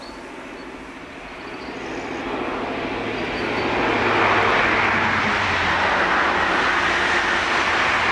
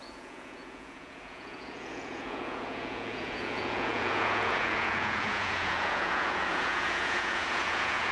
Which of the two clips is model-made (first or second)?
second